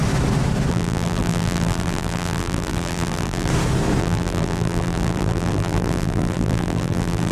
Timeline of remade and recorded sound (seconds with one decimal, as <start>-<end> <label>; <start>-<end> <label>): 0.0-0.7 recorded; 0.7-3.5 remade; 3.5-4.0 recorded; 4.0-7.3 remade